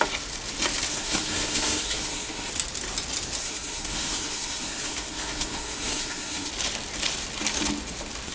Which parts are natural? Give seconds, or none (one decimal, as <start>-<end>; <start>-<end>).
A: 0.0-0.9; 2.5-3.4; 6.5-8.3